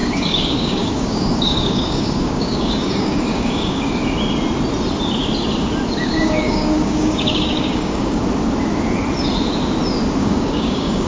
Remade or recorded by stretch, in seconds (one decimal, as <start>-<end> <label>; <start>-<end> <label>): 0.0-3.9 remade; 3.9-6.0 recorded; 6.0-8.2 remade; 8.2-10.2 recorded; 10.2-11.1 remade